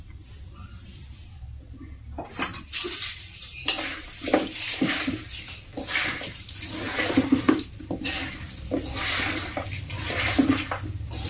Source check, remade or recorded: recorded